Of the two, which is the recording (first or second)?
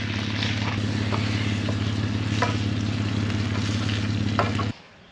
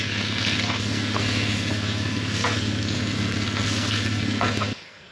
first